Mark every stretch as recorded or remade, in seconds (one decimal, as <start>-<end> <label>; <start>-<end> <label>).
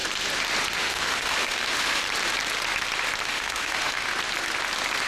0.0-0.8 recorded; 0.8-2.0 remade; 2.0-3.3 recorded; 3.3-4.1 remade; 4.1-5.1 recorded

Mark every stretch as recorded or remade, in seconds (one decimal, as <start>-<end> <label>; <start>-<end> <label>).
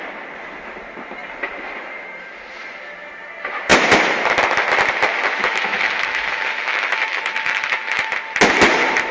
0.0-5.5 recorded; 5.5-8.1 remade; 8.1-9.1 recorded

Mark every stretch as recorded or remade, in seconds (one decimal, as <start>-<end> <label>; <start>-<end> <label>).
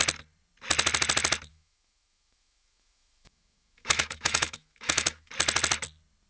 0.0-1.5 recorded; 1.5-5.3 remade; 5.3-6.3 recorded